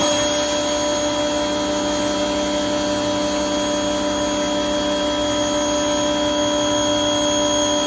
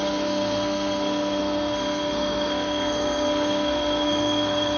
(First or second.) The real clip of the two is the first